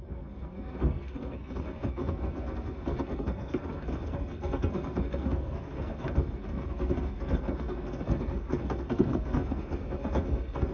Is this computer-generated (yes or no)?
yes